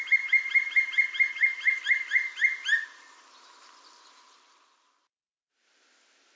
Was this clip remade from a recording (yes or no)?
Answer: no